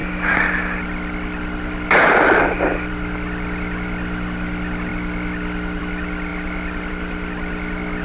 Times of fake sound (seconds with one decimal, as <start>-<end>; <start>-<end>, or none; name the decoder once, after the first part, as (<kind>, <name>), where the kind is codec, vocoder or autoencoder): 6.3-6.9 (vocoder, BigVGAN v2)